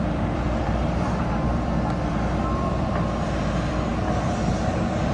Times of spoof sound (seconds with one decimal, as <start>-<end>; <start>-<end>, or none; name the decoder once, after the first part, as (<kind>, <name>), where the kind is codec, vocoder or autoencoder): 0.0-3.9 (vocoder, BigVGAN v2); 4.5-5.1